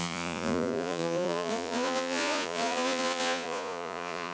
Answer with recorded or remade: remade